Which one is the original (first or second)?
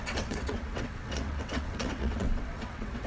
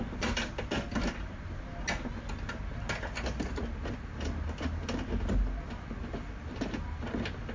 second